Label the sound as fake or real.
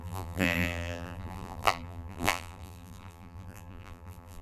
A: fake